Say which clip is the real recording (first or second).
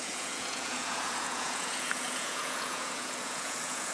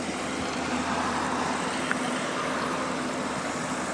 second